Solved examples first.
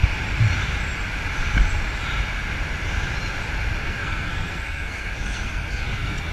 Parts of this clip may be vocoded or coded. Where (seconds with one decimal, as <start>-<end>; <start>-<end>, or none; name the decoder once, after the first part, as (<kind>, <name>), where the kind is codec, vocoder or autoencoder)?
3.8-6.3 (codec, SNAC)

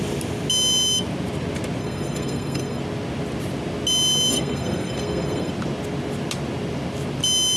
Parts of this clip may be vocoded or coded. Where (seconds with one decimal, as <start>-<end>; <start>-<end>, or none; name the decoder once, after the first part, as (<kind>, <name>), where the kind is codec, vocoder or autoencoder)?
1.8-2.8 (codec, SNAC); 4.3-5.5

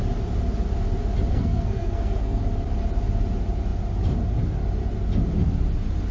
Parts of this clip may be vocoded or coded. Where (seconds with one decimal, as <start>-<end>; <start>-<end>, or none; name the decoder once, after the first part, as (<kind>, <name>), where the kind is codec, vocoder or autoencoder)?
1.3-2.4 (codec, SNAC)

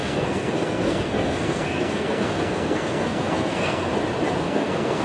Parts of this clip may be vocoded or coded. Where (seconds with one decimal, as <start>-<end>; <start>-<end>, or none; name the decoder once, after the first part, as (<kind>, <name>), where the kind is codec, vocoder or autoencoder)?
0.0-3.9 (codec, SNAC); 4.4-5.0

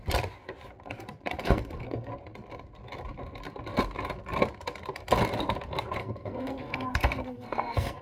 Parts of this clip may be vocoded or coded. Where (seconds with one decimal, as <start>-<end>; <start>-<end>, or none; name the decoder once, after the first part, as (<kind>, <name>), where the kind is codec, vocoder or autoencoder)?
1.4-2.1 (codec, SNAC); 6.0-8.0

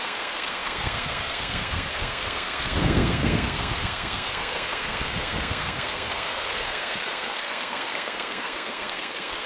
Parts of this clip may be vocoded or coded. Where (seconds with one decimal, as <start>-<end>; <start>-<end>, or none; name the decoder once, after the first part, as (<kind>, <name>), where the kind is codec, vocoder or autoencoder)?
0.0-9.5 (codec, SNAC)